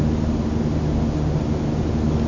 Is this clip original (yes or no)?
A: yes